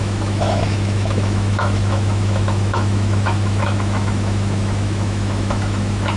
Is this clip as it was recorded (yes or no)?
no